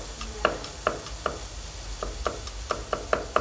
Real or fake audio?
real